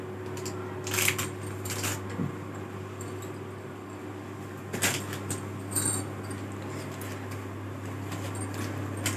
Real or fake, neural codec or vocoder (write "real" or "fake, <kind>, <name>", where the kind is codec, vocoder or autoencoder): real